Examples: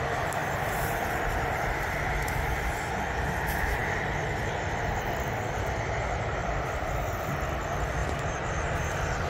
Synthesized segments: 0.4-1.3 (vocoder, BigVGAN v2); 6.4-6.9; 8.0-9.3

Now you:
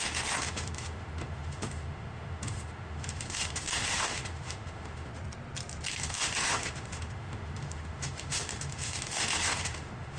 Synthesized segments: 0.0-5.1 (autoencoder, DAC-VAE); 5.9-10.2

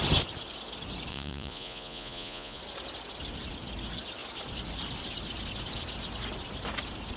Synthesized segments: 1.1-2.6 (vocoder, Vocos)